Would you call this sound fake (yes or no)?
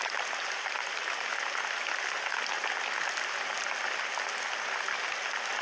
no